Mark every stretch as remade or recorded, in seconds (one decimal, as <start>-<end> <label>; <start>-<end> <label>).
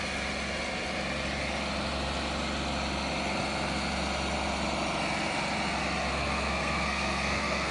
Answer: 0.0-6.1 recorded; 6.1-7.7 remade